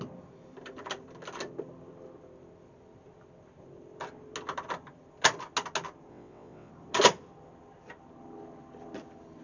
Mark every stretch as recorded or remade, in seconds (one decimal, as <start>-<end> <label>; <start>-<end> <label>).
0.0-6.1 recorded; 6.1-6.7 remade; 6.7-9.4 recorded

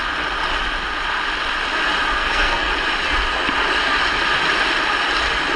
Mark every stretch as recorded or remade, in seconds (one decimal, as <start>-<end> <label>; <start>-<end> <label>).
0.0-2.2 recorded; 2.2-2.7 remade; 2.7-5.6 recorded

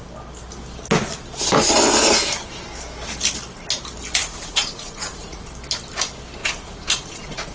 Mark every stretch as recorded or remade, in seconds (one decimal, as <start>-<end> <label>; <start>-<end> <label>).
0.0-4.2 recorded; 4.2-5.5 remade; 5.5-6.4 recorded; 6.4-7.5 remade

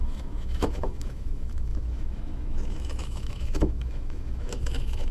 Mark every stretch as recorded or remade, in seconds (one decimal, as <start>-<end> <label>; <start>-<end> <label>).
0.0-5.1 remade

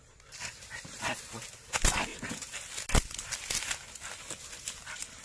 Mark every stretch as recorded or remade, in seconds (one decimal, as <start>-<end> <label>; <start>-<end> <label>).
0.0-5.2 recorded